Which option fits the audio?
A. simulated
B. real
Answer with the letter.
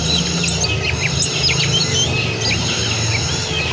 B